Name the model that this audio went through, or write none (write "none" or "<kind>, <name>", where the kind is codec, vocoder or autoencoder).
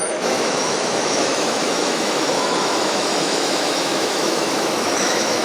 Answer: autoencoder, DAC-VAE